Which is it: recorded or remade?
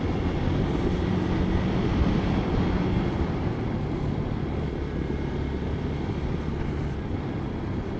recorded